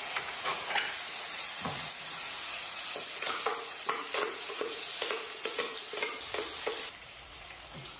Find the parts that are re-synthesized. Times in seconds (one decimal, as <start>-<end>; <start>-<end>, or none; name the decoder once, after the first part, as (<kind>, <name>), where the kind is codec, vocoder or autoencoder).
0.0-5.7 (vocoder, Vocos); 7.0-8.0